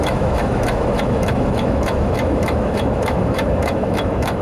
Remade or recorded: remade